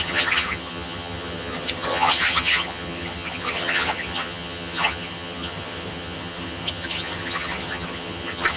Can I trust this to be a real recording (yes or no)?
no